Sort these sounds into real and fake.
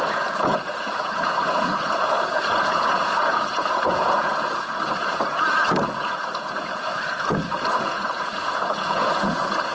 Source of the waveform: fake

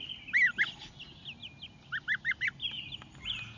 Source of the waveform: real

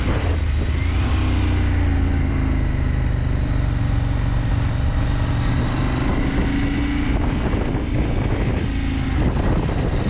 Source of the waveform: real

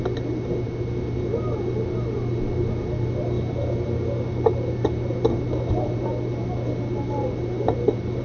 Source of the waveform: real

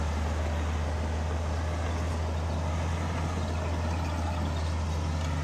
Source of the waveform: real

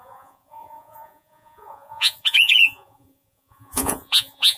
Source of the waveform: fake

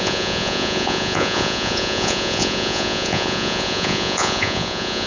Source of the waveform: fake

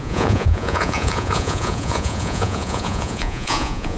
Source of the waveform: fake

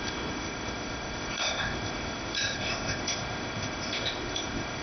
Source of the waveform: fake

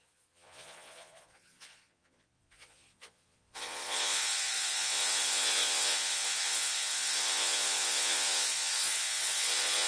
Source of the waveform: fake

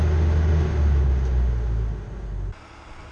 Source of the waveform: real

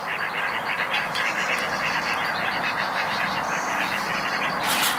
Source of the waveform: real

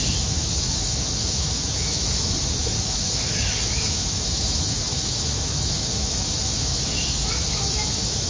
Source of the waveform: fake